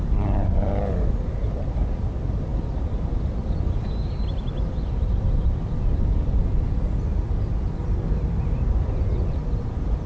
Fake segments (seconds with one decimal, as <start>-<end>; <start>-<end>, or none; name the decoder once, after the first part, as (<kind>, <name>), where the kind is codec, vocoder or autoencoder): none